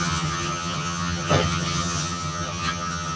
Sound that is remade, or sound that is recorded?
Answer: remade